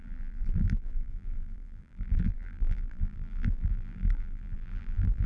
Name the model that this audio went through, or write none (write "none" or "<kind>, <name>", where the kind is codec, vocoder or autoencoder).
vocoder, BigVGAN v2